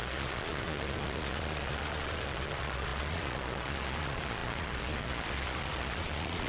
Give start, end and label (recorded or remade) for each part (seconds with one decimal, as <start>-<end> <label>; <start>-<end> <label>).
0.0-6.5 remade